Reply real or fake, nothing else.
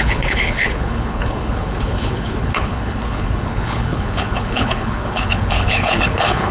fake